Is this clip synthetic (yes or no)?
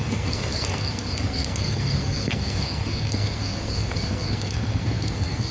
yes